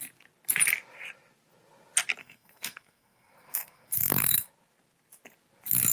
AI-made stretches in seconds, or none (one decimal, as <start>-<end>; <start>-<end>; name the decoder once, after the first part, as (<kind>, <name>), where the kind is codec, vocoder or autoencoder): 2.2-4.5 (codec, SNAC)